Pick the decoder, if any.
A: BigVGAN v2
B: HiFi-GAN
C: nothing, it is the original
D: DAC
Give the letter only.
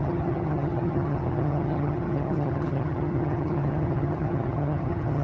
B